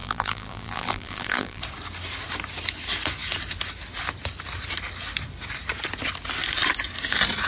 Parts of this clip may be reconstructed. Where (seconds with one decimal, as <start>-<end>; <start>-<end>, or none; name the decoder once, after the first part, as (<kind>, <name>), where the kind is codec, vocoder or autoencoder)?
0.0-1.6 (vocoder, BigVGAN v2)